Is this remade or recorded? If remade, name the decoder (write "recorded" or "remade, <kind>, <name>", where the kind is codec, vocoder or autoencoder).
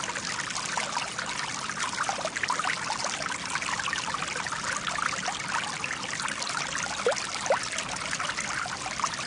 recorded